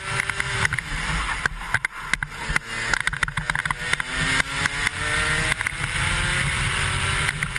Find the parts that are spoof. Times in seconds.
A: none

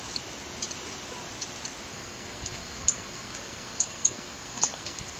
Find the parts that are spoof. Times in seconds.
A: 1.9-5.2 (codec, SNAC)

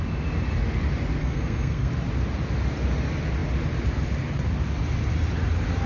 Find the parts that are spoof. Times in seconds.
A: 1.2-1.9 (codec, SNAC)